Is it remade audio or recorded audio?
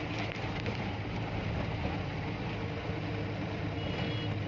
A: recorded